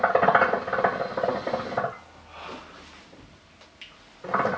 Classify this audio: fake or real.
real